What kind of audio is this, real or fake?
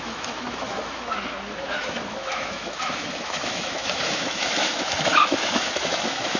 fake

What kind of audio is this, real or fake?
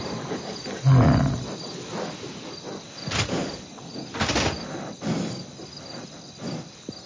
real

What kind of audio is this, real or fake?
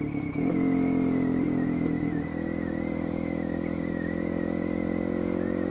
real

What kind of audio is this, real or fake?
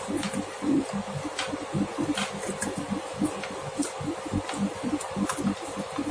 real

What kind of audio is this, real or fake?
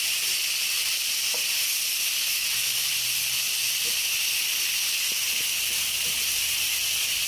real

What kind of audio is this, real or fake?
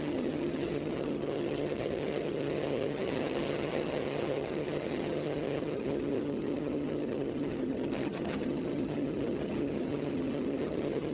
fake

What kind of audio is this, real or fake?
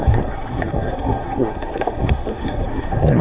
fake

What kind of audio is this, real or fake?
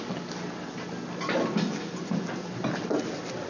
real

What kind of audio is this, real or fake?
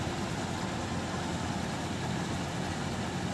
real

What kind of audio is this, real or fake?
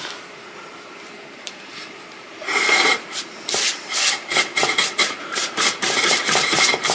fake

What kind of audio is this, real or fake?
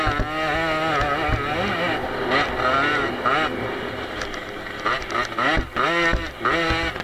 real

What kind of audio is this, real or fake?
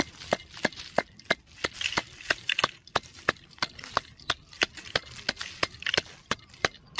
real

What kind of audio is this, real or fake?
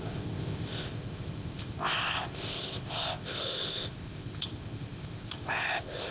fake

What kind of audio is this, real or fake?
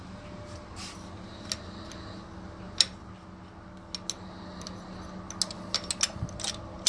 real